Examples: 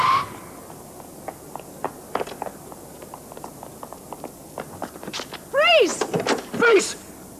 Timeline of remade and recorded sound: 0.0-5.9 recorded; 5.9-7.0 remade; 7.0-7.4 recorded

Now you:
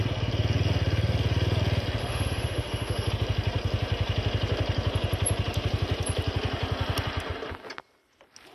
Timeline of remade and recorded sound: 0.0-2.0 recorded; 2.0-3.1 remade; 3.1-8.5 recorded